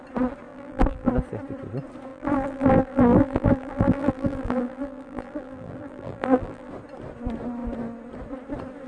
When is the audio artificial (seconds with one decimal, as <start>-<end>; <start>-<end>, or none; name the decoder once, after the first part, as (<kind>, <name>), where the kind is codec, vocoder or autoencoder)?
0.5-1.1 (vocoder, BigVGAN v2); 2.1-6.7